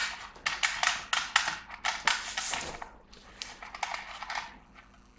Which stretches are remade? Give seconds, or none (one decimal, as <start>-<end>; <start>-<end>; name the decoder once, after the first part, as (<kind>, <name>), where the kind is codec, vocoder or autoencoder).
none